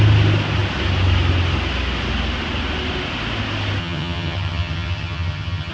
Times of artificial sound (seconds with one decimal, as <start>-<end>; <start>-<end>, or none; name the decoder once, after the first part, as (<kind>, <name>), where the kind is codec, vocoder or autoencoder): 3.8-5.7 (vocoder, HiFi-GAN)